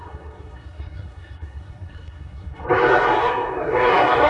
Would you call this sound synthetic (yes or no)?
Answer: yes